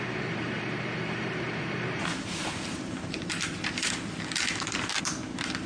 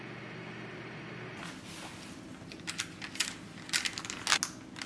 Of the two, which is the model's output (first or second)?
first